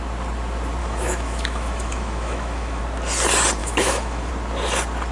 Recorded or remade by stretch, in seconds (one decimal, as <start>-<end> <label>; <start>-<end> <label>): 0.0-0.8 recorded; 0.8-2.8 remade; 2.8-3.6 recorded; 3.6-4.3 remade; 4.3-5.1 recorded